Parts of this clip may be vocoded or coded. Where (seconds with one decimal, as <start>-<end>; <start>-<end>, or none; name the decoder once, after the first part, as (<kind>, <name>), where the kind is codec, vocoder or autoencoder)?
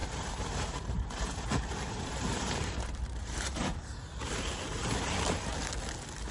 0.0-3.8 (vocoder, BigVGAN v2); 4.2-5.5